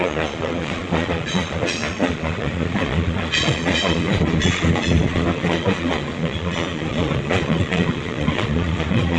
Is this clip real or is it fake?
fake